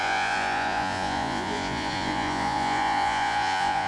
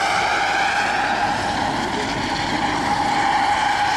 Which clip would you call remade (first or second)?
first